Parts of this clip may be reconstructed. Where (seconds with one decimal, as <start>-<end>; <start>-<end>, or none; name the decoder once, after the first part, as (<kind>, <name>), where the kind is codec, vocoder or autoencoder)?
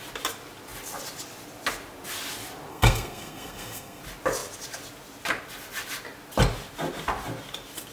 2.7-4.0 (codec, SNAC)